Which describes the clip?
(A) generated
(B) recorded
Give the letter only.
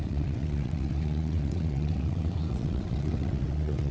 A